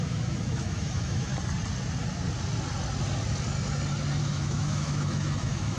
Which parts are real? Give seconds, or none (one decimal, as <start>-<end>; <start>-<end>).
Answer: 1.3-4.2